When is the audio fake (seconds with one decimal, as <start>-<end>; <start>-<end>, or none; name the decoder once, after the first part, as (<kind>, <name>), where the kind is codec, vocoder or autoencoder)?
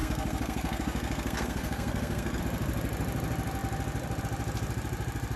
0.0-2.4 (codec, SNAC)